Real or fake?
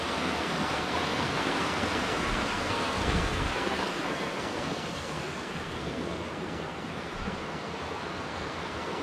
fake